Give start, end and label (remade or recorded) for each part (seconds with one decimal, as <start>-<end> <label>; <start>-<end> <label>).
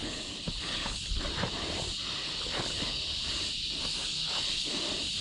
0.0-1.2 remade; 1.2-2.2 recorded; 2.2-3.0 remade; 3.0-3.9 recorded; 3.9-4.7 remade; 4.7-5.2 recorded